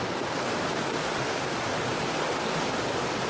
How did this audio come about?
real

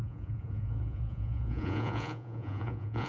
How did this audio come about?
fake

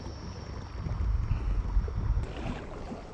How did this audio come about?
real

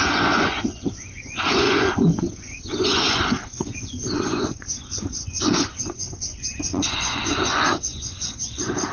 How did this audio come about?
fake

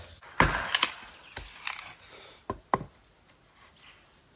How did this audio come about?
real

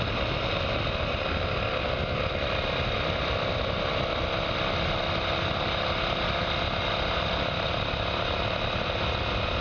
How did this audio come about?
real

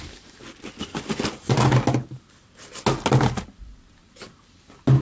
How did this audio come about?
real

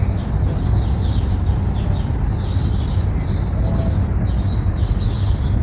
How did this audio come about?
real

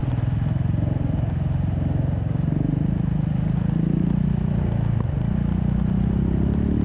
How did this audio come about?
real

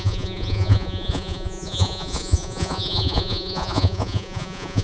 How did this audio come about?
fake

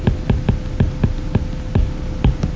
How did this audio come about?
real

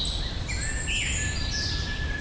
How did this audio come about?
real